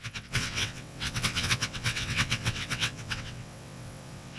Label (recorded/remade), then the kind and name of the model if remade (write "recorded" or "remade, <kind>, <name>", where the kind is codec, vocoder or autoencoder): remade, vocoder, WaveNeXt